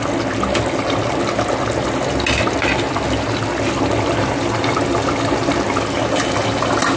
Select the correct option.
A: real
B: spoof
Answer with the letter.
A